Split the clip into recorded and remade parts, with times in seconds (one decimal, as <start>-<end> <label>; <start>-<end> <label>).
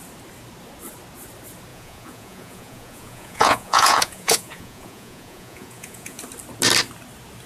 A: 0.0-1.7 recorded; 1.7-6.2 remade; 6.2-7.5 recorded